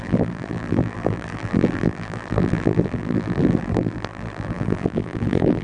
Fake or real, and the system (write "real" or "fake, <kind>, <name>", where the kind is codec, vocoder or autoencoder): fake, vocoder, BigVGAN v2